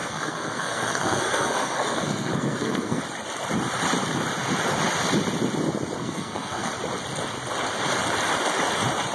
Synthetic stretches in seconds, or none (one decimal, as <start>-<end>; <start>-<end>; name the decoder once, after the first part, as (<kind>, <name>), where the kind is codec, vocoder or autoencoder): 0.0-3.0 (codec, SNAC); 6.0-6.7

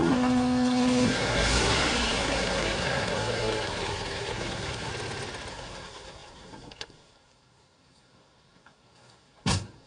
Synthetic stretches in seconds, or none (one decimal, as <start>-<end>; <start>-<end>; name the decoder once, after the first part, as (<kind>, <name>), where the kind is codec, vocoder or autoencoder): 0.0-4.9 (codec, SNAC); 5.5-9.9

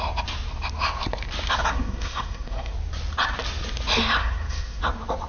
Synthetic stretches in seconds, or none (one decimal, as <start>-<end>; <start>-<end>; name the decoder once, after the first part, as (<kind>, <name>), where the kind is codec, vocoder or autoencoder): 1.7-2.7 (codec, SNAC); 4.2-4.8

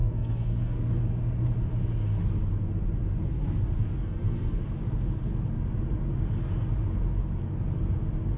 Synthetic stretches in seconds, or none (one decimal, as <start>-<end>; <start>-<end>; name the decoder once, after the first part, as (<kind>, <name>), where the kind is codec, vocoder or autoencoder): 0.0-0.9 (codec, SNAC); 3.3-4.6

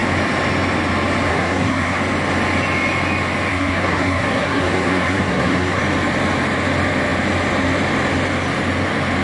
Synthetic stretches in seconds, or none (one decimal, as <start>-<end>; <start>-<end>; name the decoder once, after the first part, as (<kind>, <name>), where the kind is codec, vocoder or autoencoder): 1.3-2.0 (codec, SNAC); 3.5-5.8

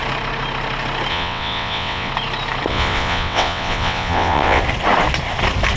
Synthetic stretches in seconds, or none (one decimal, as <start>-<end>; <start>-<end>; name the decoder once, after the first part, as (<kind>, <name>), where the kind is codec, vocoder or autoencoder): 1.1-2.1 (vocoder, WaveNeXt); 2.7-4.6

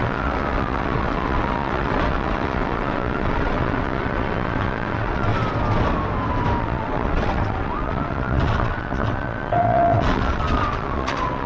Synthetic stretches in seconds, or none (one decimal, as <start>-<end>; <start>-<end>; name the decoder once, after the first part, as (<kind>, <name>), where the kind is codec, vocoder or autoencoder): 0.0-5.3 (vocoder, WaveNeXt); 6.6-11.5